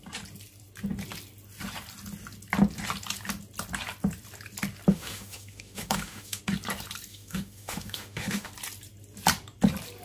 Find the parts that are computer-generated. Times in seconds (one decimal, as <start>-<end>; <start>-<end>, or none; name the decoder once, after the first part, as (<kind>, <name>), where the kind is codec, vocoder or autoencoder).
4.9-6.4 (autoencoder, DAC-VAE); 7.1-8.5